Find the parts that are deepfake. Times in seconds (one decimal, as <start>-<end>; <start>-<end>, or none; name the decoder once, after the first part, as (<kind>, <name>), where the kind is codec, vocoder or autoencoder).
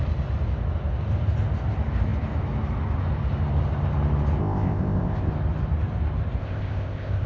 4.4-5.3 (codec, ZipCodec); 6.4-7.3